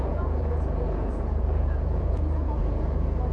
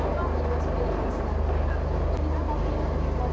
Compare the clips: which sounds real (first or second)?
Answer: second